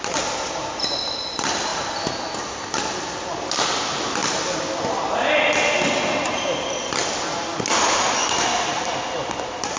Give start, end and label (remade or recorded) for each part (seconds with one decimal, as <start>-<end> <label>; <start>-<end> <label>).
0.0-9.8 recorded

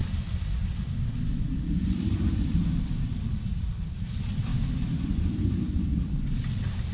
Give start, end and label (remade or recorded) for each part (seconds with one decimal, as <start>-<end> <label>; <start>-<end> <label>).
0.0-6.9 recorded